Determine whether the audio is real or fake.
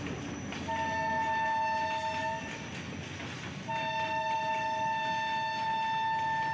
real